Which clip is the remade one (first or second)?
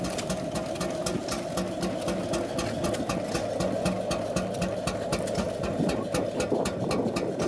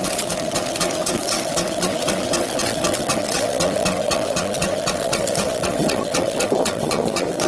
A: second